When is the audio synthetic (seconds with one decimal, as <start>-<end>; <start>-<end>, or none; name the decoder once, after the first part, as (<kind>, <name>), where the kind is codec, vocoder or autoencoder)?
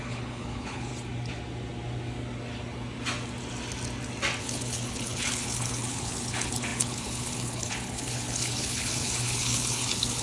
0.0-0.9 (codec, HILCodec); 4.4-10.2